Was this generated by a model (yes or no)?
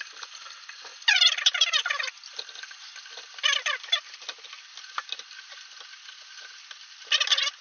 no